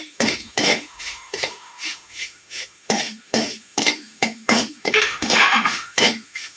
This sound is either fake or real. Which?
fake